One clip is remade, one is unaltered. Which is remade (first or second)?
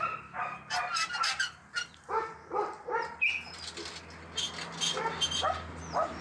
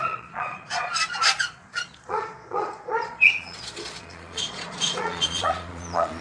second